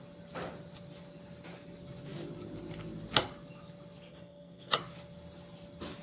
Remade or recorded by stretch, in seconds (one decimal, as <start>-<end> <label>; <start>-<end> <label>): 0.0-4.1 recorded; 4.1-4.8 remade; 4.8-6.0 recorded